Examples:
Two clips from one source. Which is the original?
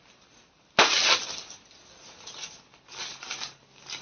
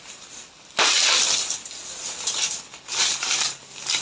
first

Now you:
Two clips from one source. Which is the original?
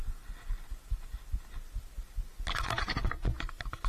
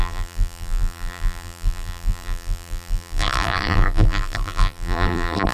first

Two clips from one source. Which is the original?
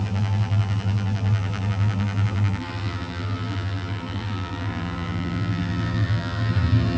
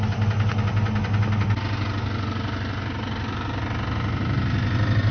second